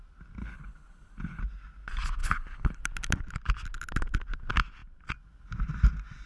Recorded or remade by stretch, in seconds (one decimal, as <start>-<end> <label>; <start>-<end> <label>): 0.0-0.4 recorded; 0.4-1.4 remade; 1.4-2.2 recorded; 2.2-2.8 remade; 2.8-6.3 recorded